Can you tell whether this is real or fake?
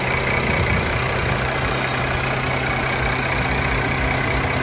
real